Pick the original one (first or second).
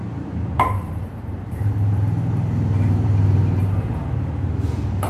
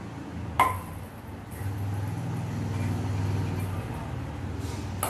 second